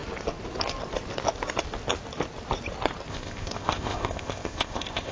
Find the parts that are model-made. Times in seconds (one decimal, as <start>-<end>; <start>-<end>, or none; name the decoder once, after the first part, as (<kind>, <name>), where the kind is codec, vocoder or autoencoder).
3.1-5.1 (codec, ZipCodec)